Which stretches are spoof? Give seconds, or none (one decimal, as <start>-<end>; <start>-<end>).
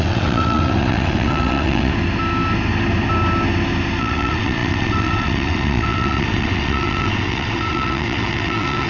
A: 0.0-1.9; 4.0-8.9